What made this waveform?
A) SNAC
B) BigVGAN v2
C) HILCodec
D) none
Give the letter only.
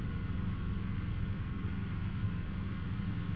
A